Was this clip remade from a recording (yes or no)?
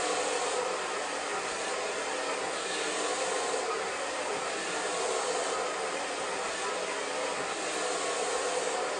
no